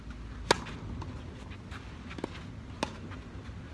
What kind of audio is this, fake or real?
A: real